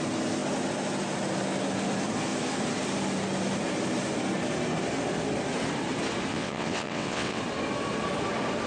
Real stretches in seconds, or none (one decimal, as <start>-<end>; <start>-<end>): 0.0-6.3; 7.4-8.7